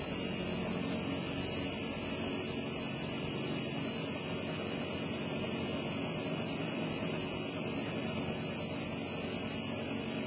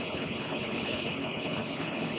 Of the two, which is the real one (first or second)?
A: first